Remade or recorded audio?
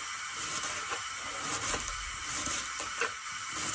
recorded